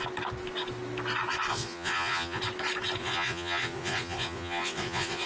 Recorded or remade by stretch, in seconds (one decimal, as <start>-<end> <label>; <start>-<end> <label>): 0.0-1.5 recorded; 1.5-2.4 remade; 2.4-3.0 recorded; 3.0-5.3 remade